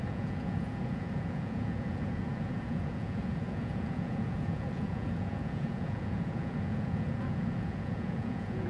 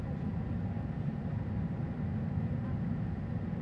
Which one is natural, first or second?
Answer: second